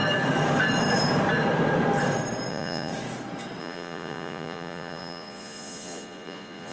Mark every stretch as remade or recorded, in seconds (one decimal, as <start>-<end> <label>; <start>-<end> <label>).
0.0-2.5 recorded; 2.5-2.9 remade; 2.9-3.6 recorded; 3.6-6.7 remade